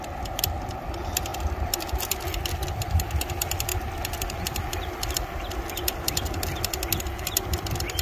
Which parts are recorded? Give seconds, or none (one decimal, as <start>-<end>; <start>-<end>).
0.0-8.0